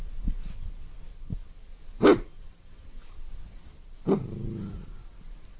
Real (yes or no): yes